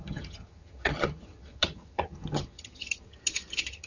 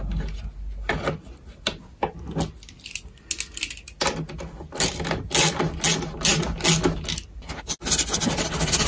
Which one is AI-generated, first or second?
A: first